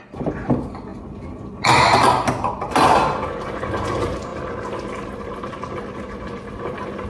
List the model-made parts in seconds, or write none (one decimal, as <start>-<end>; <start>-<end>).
none

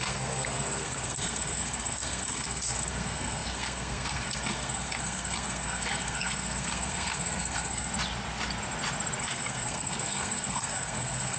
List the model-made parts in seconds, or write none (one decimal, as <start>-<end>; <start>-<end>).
0.0-7.9; 9.2-11.4

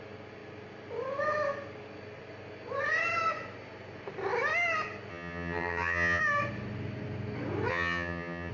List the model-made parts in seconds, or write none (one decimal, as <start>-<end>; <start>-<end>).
5.1-6.2; 7.7-8.5

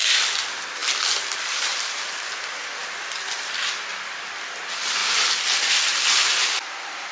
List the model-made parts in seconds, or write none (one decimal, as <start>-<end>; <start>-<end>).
0.0-0.8; 1.4-5.0; 5.7-7.1

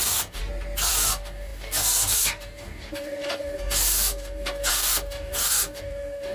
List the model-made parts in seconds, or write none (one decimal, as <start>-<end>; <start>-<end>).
0.0-0.4; 0.9-6.3

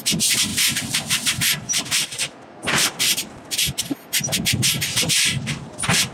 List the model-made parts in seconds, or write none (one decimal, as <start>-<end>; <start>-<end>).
0.5-2.0; 2.6-4.6